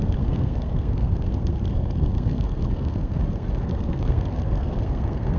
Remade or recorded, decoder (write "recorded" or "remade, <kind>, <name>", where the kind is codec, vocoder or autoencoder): remade, codec, SNAC